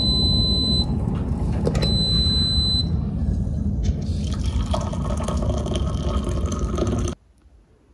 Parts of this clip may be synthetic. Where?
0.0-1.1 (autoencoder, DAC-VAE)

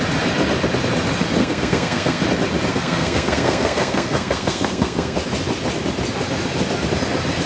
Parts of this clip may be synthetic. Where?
1.4-2.2 (codec, SNAC); 2.7-5.2

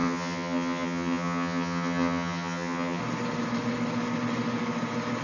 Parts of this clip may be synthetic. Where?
0.0-3.0 (vocoder, HiFi-GAN)

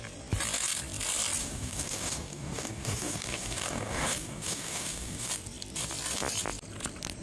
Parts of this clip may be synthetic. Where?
1.4-5.3 (codec, DAC)

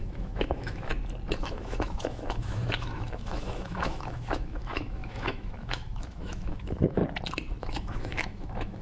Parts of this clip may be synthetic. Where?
0.0-0.9 (autoencoder, DAC-VAE); 1.4-7.0; 7.6-8.8

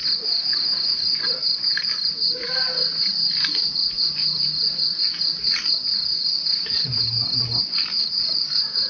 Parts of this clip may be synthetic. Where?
3.3-5.5 (vocoder, BigVGAN v2); 7.6-8.9

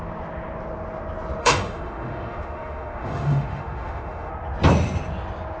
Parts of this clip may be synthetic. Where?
1.4-4.3 (autoencoder, DAC-VAE)

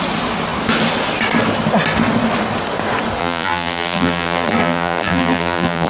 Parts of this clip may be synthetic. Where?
3.2-5.9 (vocoder, BigVGAN v2)